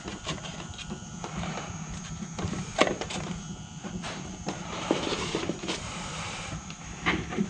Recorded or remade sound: remade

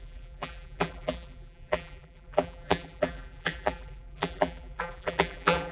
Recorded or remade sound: remade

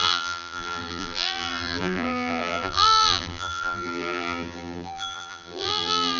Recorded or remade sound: remade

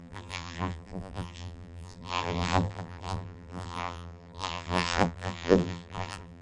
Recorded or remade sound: remade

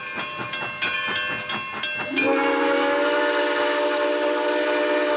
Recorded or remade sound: recorded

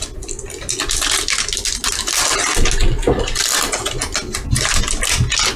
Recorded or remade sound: recorded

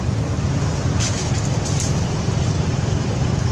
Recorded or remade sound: recorded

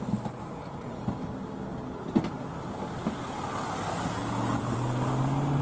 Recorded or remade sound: recorded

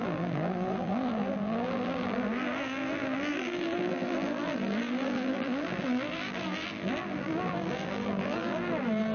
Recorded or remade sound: remade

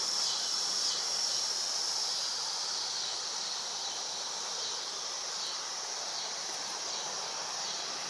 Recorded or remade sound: remade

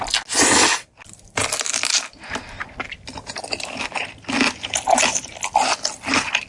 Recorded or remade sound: recorded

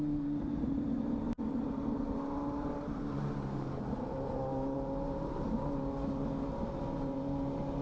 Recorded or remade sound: remade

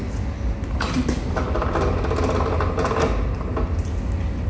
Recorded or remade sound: recorded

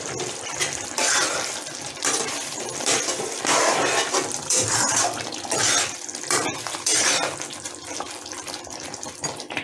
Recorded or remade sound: remade